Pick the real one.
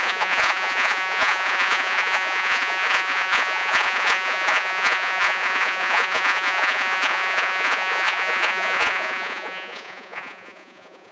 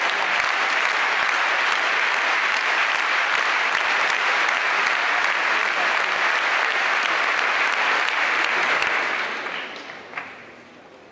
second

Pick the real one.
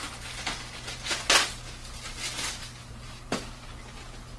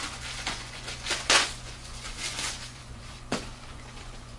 first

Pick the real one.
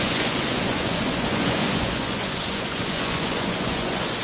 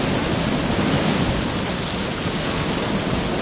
second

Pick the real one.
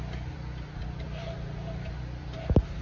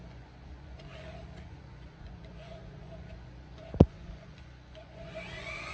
first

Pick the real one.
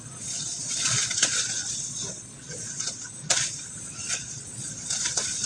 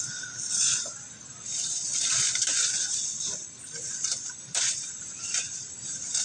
second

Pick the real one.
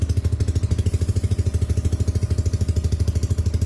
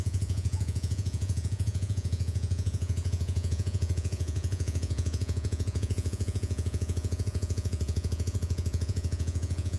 first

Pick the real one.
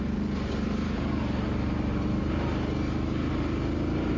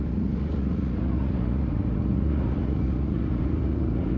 first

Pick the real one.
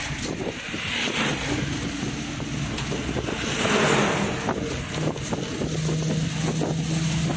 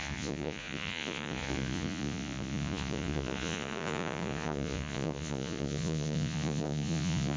first